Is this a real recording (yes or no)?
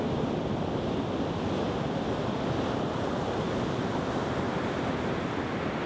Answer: yes